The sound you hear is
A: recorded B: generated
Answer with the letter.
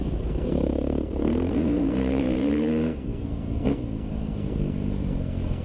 B